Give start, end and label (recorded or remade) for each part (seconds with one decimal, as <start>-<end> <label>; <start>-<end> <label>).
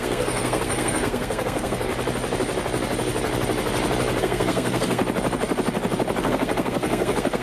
0.0-1.9 remade; 1.9-4.2 recorded; 4.2-5.0 remade; 5.0-6.2 recorded; 6.2-7.4 remade